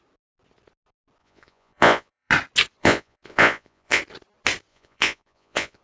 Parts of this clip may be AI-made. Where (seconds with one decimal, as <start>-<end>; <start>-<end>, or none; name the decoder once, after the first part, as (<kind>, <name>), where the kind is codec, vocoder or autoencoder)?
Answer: 1.2-2.3 (vocoder, Vocos); 2.8-4.0; 4.7-5.8